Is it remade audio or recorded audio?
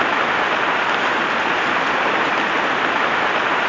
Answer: recorded